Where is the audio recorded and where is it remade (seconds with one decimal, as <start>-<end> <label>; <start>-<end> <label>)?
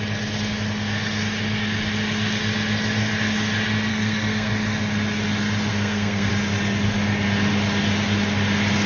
0.0-3.9 recorded; 3.9-4.5 remade; 4.5-5.7 recorded; 5.7-6.3 remade; 6.3-8.9 recorded